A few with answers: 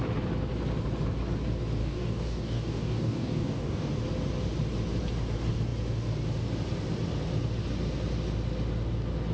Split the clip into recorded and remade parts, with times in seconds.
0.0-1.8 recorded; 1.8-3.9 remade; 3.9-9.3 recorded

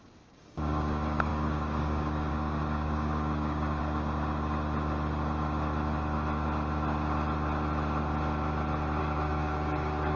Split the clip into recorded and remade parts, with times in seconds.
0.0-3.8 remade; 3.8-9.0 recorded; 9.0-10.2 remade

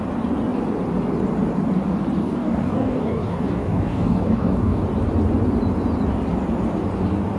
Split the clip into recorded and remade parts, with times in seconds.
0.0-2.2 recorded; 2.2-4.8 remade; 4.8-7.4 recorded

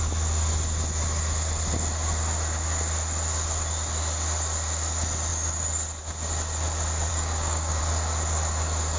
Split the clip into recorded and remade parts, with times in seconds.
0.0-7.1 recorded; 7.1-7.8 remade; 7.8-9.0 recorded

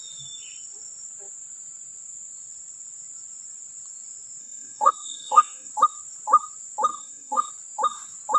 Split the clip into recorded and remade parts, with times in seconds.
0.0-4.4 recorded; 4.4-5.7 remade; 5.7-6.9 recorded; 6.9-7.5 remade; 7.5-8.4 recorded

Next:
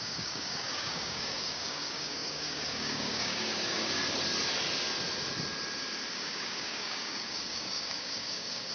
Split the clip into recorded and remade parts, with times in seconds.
0.0-4.0 remade; 4.0-6.1 recorded; 6.1-8.7 remade

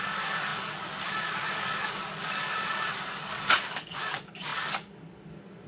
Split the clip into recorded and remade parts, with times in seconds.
0.0-5.7 remade